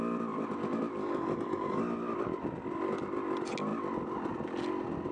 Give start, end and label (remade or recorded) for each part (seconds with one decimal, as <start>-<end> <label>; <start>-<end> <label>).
0.0-1.0 recorded; 1.0-1.8 remade; 1.8-5.1 recorded